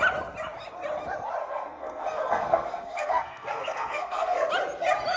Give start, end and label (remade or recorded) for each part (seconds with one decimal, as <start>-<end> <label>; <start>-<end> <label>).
0.0-1.4 recorded; 1.4-4.5 remade; 4.5-5.2 recorded